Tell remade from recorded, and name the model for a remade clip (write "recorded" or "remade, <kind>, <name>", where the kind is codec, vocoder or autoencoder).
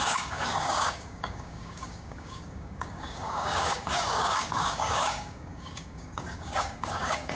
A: remade, codec, DAC